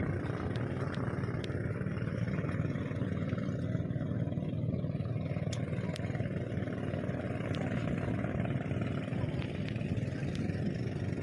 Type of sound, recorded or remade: recorded